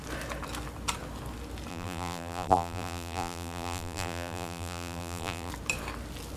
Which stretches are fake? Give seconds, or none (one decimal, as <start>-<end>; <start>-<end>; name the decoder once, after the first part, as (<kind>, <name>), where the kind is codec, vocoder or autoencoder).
1.7-5.5 (vocoder, BigVGAN v2)